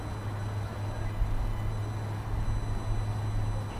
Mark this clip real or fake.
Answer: real